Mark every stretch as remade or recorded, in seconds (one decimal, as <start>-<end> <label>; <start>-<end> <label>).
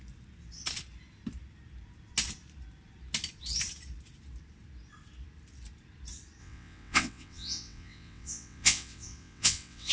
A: 0.0-6.4 recorded; 6.4-9.9 remade